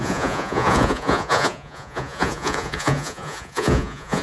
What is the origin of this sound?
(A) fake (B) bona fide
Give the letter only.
A